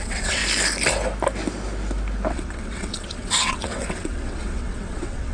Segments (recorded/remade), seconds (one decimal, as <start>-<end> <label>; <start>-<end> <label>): 0.0-0.4 remade; 0.4-2.3 recorded; 2.3-5.3 remade